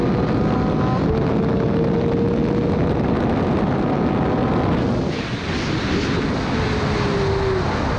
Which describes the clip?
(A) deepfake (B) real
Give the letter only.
B